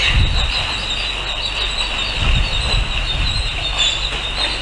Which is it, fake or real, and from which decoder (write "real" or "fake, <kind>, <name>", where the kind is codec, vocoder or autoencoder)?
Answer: real